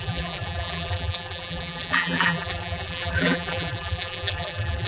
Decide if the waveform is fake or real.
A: fake